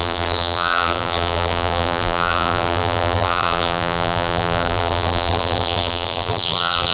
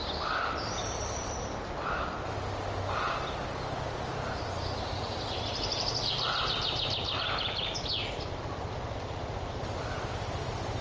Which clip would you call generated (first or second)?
first